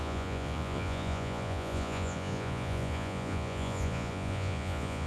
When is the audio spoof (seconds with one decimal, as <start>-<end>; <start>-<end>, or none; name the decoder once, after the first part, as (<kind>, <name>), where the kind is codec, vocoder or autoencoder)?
0.0-5.1 (vocoder, Vocos)